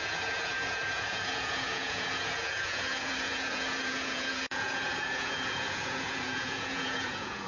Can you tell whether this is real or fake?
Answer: fake